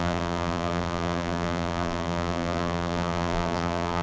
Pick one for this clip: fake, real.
fake